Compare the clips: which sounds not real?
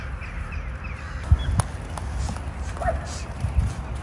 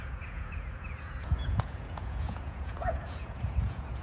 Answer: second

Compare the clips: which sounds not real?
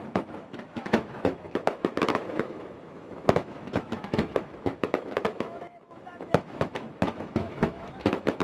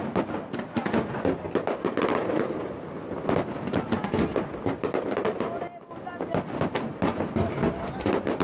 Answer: first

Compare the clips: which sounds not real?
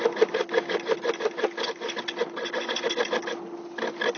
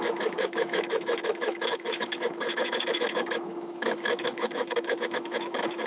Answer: second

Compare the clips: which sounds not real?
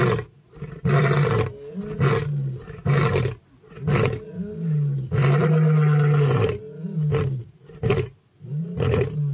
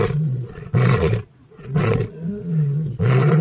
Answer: second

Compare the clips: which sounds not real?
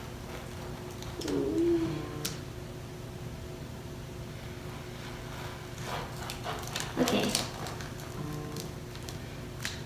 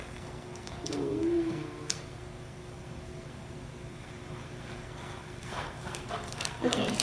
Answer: second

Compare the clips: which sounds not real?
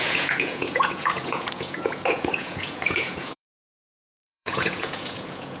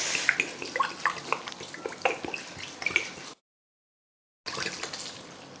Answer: first